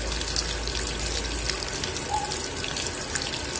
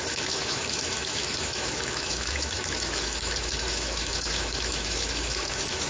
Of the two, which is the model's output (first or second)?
second